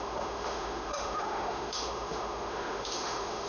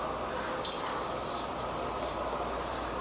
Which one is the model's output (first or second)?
first